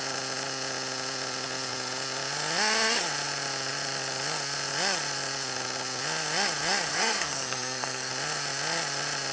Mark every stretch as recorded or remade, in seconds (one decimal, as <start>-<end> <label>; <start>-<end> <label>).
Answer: 0.0-6.9 recorded; 6.9-8.1 remade; 8.1-9.3 recorded